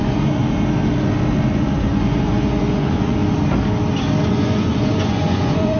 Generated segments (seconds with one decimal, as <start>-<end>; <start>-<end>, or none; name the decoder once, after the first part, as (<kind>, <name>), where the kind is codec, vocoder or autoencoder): 0.0-0.4 (vocoder, Vocos); 1.5-3.2; 4.2-5.8